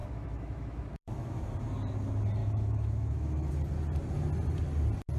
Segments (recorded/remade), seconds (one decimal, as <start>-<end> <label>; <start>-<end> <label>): 0.0-1.4 remade; 1.4-2.4 recorded; 2.4-3.5 remade; 3.5-5.2 recorded